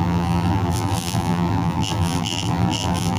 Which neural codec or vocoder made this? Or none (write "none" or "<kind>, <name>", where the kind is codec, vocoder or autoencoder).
vocoder, BigVGAN v2